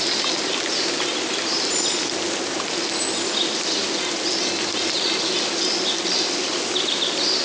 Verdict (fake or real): real